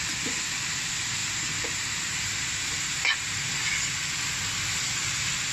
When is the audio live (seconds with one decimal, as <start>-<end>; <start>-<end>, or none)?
0.0-5.5